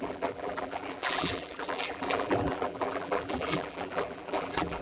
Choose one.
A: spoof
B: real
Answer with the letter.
A